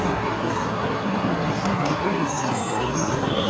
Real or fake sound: fake